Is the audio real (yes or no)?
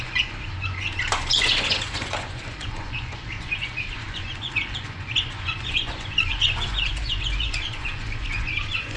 no